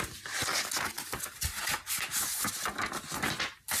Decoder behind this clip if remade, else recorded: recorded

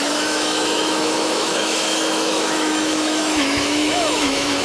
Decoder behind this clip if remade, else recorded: remade, autoencoder, DAC-VAE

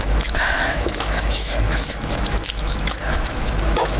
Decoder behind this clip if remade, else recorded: remade, autoencoder, DAC-VAE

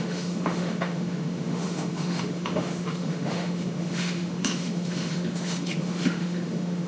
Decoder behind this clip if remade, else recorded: remade, autoencoder, DAC-VAE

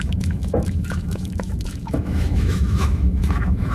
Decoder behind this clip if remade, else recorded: remade, autoencoder, DAC-VAE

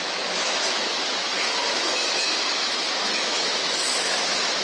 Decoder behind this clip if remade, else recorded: remade, autoencoder, DAC-VAE